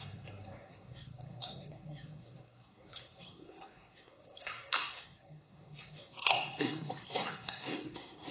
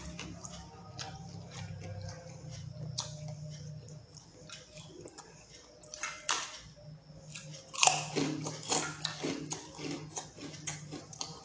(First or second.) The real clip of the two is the second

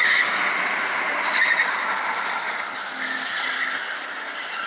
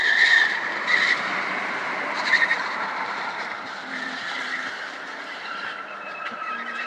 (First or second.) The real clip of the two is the first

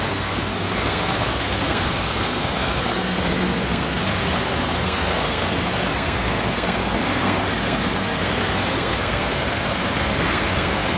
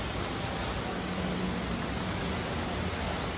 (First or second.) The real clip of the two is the second